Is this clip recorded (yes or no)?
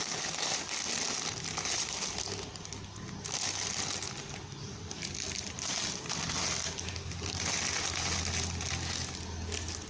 yes